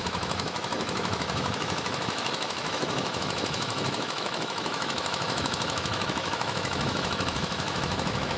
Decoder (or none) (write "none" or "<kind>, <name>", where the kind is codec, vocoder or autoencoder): autoencoder, DAC-VAE